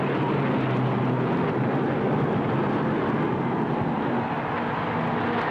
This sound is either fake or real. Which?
real